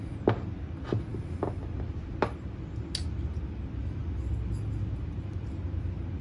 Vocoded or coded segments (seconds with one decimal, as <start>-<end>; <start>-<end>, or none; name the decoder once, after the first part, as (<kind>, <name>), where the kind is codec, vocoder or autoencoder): none